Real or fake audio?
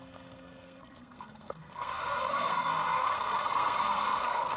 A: fake